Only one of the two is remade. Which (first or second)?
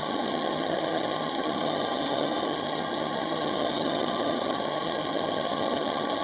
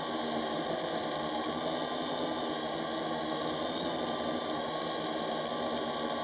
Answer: first